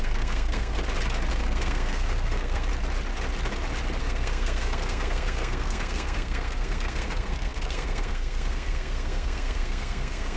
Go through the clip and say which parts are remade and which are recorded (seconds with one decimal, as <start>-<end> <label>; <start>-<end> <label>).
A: 0.0-0.7 remade; 0.7-1.3 recorded; 1.3-2.7 remade; 2.7-4.0 recorded; 4.0-10.4 remade